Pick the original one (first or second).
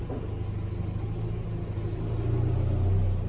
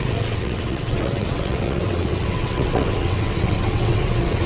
first